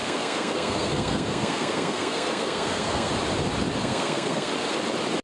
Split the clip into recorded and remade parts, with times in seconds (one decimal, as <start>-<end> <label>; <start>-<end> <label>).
0.0-3.1 remade; 3.1-3.8 recorded; 3.8-4.5 remade; 4.5-5.2 recorded